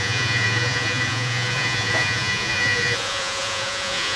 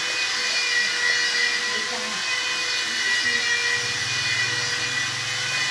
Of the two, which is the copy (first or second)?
first